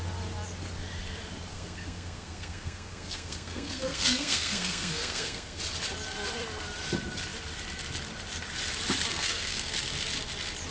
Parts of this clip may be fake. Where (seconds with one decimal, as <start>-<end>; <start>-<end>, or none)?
1.5-5.6; 9.1-9.7